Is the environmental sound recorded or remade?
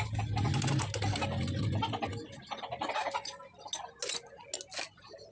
recorded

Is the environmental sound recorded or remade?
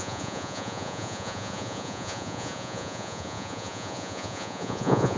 remade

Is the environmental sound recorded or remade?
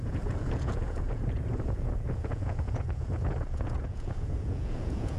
remade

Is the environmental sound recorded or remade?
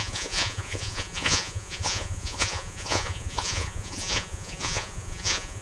remade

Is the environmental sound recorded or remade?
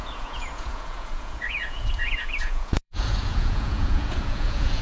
remade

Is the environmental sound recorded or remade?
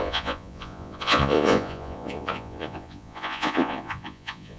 remade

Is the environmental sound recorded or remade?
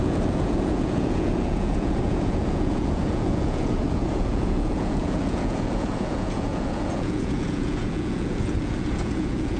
remade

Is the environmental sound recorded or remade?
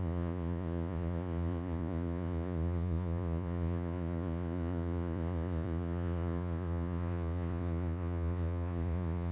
remade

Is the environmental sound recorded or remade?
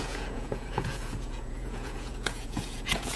remade